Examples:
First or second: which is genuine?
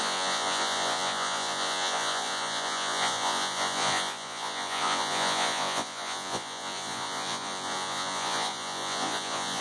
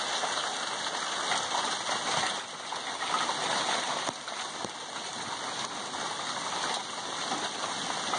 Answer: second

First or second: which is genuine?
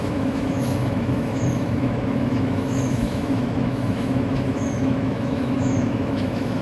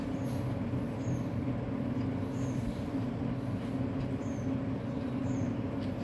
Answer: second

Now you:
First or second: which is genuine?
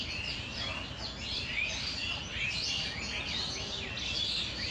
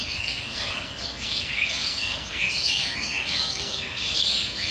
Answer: first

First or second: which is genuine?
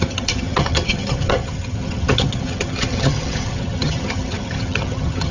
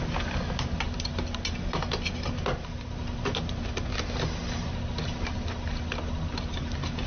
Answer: second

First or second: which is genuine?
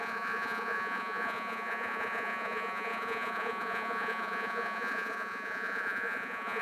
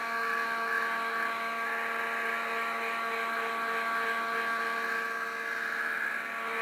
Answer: second